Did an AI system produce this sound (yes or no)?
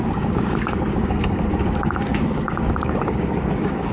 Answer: yes